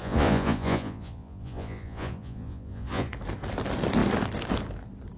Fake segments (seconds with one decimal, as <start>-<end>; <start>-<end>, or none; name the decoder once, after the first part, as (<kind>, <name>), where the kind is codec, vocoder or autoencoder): 0.0-3.1 (vocoder, Vocos)